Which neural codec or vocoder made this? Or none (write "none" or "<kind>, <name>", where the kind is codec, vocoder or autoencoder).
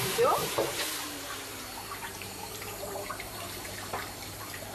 vocoder, BigVGAN v2